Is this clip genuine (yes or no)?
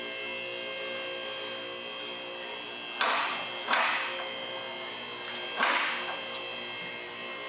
yes